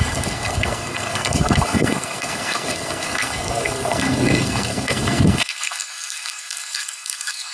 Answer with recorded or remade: remade